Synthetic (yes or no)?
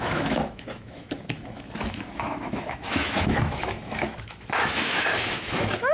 yes